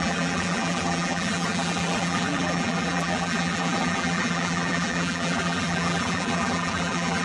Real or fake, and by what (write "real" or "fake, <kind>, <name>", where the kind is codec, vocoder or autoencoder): fake, vocoder, BigVGAN v2